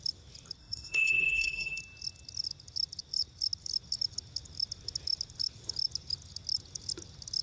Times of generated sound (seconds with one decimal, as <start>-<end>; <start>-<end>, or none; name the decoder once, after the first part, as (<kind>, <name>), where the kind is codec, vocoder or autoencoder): 0.6-1.8 (codec, SNAC)